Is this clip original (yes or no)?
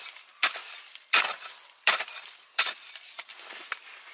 no